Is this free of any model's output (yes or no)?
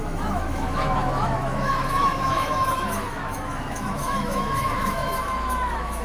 no